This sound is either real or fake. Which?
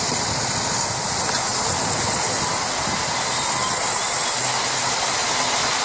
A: real